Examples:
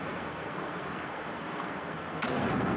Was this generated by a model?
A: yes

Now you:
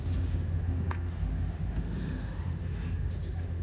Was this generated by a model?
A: yes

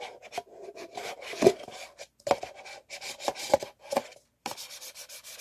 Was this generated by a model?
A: no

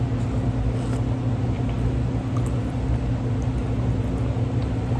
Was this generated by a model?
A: no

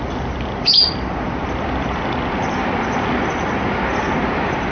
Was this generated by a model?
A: no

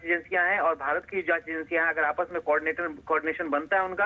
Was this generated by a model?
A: no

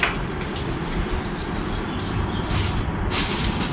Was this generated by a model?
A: no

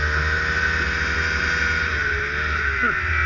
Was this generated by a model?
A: no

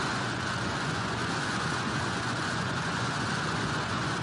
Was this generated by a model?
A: yes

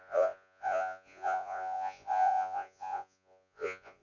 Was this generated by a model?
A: yes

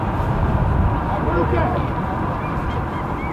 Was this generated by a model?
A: no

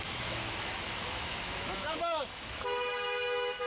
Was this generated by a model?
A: yes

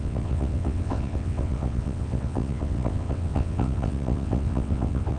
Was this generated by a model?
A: yes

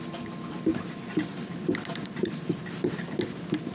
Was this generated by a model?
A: no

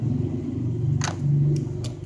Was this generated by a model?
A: no